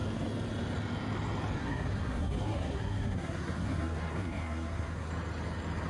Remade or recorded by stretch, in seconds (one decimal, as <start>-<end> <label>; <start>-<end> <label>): 0.0-1.6 recorded; 1.6-5.1 remade; 5.1-5.9 recorded